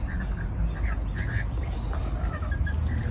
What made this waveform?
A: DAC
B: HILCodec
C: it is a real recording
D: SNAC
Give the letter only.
C